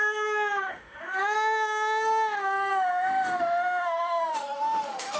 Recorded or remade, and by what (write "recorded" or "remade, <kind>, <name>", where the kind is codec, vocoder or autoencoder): remade, autoencoder, DAC-VAE